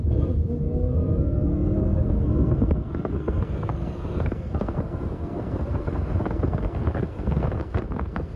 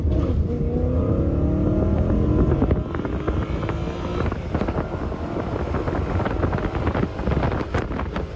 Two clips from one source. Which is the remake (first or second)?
first